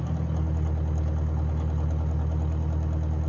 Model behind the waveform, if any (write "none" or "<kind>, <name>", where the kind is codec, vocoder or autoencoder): none